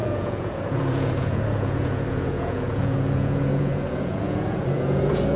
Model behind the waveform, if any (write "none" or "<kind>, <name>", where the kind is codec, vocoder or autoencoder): vocoder, Vocos